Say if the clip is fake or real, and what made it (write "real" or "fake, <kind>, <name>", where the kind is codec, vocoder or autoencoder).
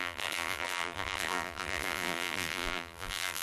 fake, vocoder, BigVGAN v2